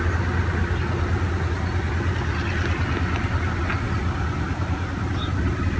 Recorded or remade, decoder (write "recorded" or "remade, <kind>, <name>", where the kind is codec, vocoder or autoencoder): recorded